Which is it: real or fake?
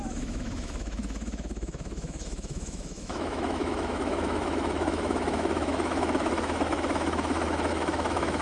fake